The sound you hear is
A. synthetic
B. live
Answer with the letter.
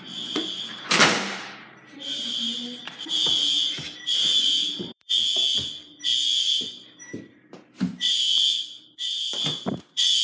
A